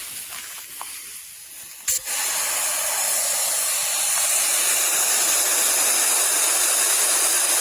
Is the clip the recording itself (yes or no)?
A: yes